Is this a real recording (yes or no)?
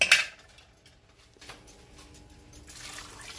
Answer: yes